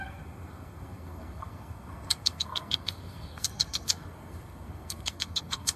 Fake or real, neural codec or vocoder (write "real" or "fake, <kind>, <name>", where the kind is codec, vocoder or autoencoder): fake, codec, SNAC